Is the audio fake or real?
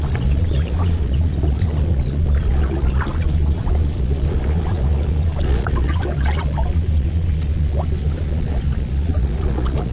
fake